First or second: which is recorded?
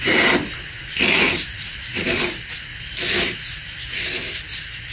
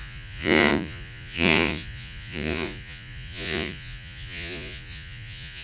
first